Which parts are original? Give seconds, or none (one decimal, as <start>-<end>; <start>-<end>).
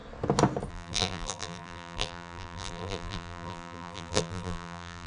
0.0-0.7